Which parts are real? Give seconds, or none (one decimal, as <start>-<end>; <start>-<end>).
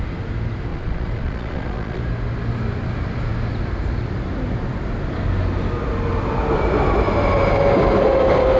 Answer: 0.0-0.7; 2.0-8.6